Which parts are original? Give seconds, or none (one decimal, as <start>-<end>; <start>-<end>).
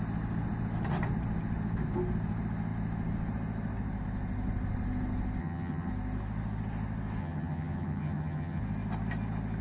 0.0-5.4; 5.9-7.2; 8.6-9.6